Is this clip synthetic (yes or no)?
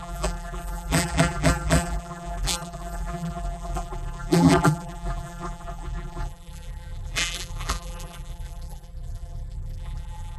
yes